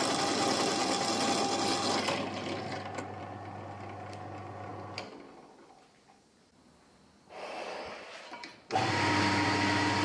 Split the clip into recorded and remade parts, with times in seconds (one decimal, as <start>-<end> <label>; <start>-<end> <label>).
0.0-10.0 recorded